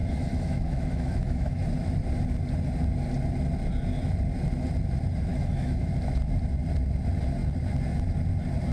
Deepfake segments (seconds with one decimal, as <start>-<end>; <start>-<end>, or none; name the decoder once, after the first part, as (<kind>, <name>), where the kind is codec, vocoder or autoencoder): 0.0-1.7 (autoencoder, DAC-VAE); 5.3-5.9